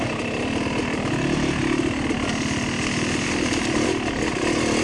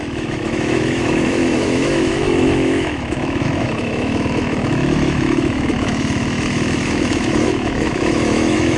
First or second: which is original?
first